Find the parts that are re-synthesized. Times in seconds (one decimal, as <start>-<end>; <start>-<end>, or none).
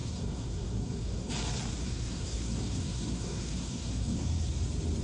0.0-1.3; 1.8-4.5